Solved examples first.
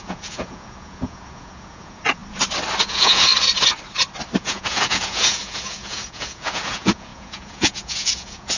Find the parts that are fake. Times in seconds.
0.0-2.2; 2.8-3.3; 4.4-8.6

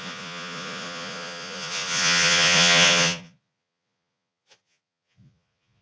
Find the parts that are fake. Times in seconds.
0.0-5.8

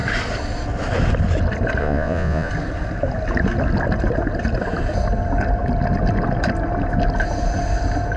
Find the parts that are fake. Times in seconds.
1.8-2.5